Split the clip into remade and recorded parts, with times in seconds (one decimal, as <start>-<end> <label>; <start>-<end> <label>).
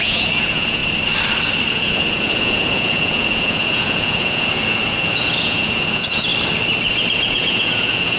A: 0.0-0.8 remade; 0.8-1.7 recorded; 1.7-6.3 remade; 6.3-7.1 recorded; 7.1-8.2 remade